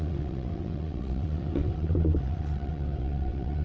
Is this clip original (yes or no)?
no